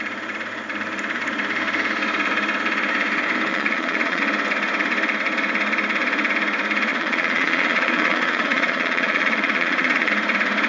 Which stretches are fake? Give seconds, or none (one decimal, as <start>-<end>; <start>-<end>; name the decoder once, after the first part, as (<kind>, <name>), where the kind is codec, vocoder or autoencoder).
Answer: 3.5-4.2 (vocoder, Vocos); 6.9-10.1